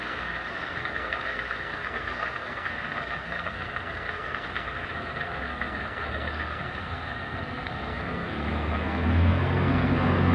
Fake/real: fake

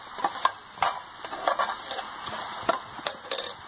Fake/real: real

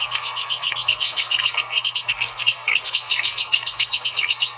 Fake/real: fake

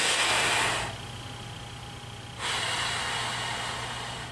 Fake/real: real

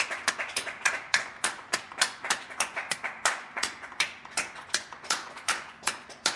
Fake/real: fake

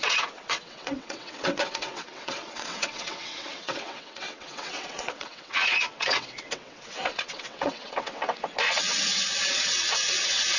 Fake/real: fake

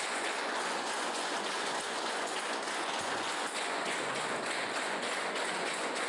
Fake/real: fake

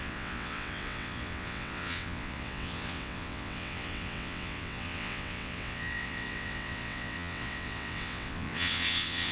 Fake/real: fake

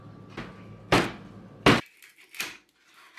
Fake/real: real